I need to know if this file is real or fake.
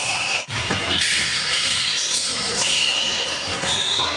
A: fake